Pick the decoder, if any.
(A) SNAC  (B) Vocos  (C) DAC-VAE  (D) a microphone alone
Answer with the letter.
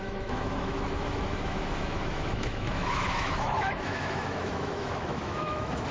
C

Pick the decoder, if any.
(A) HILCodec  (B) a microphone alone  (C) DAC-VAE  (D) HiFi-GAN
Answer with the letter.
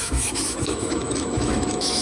C